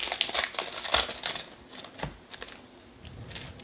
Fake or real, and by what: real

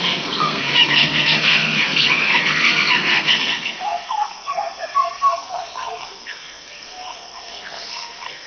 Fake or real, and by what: fake, codec, SNAC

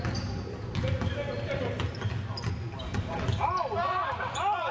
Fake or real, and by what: real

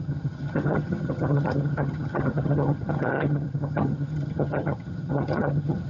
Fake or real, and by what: fake, vocoder, HiFi-GAN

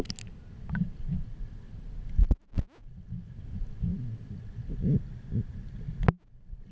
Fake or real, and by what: real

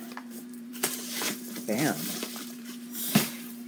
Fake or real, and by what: fake, vocoder, BigVGAN v2